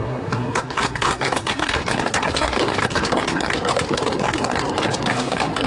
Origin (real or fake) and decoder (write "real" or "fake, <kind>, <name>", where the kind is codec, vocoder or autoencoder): fake, codec, SNAC